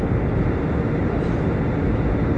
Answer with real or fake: real